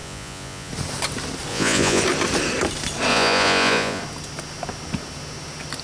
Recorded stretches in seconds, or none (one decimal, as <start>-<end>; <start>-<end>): 0.7-1.5; 2.0-3.1; 4.0-5.8